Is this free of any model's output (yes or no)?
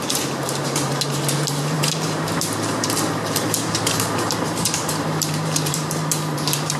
no